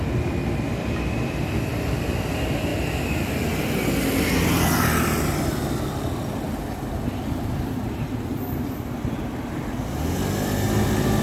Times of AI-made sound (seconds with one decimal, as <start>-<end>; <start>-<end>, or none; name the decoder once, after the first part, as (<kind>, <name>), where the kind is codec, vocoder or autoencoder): none